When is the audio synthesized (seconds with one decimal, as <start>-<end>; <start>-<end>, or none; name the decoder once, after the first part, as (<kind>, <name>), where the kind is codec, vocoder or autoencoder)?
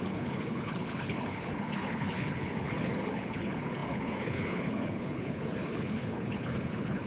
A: 0.0-7.1 (codec, HILCodec)